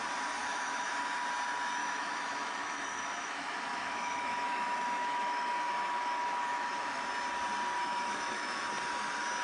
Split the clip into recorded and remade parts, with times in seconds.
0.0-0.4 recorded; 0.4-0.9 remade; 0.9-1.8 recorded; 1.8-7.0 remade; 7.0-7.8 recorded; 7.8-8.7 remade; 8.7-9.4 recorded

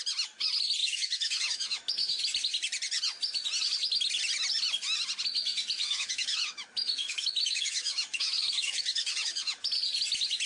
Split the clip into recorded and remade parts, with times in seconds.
0.0-0.8 recorded; 0.8-2.2 remade; 2.2-5.8 recorded; 5.8-9.7 remade; 9.7-10.5 recorded